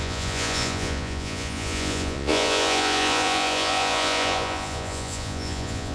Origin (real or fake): fake